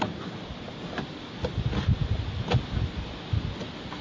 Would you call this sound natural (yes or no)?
yes